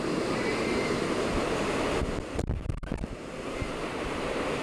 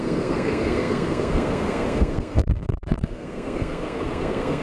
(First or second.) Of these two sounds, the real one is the first